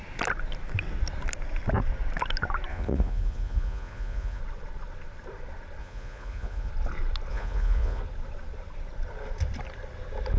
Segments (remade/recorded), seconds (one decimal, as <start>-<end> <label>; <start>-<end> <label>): 0.0-2.7 recorded; 2.7-4.4 remade; 4.4-5.8 recorded; 5.8-6.7 remade; 6.7-7.3 recorded; 7.3-8.0 remade; 8.0-10.4 recorded